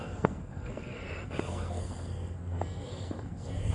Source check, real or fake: fake